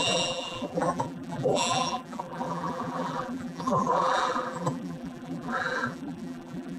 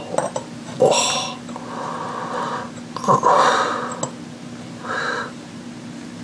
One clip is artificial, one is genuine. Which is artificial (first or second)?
first